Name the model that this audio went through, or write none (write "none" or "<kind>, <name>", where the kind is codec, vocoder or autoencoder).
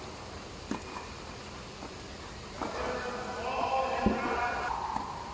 none